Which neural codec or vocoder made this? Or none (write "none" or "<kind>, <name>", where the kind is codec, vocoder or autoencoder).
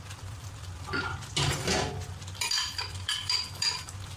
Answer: vocoder, BigVGAN v2